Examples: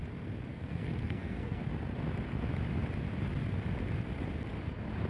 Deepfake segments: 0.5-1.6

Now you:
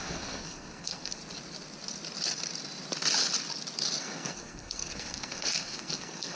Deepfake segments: 0.0-1.2; 4.0-6.4

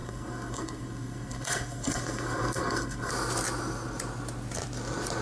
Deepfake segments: 0.0-3.1

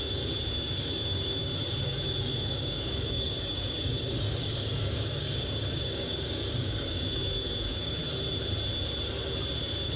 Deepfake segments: 0.0-8.0; 9.6-10.0

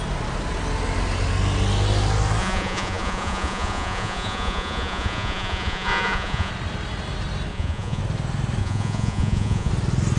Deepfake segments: 2.4-6.5; 7.5-8.0; 8.6-9.7